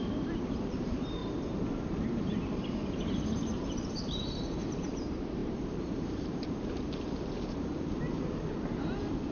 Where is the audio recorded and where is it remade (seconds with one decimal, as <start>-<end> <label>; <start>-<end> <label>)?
0.0-1.2 remade; 1.2-2.0 recorded; 2.0-9.3 remade